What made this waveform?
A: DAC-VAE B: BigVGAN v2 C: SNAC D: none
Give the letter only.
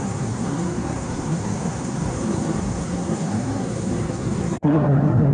C